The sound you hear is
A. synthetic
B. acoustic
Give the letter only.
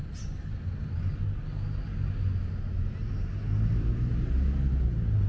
B